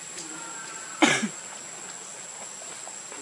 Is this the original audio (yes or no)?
yes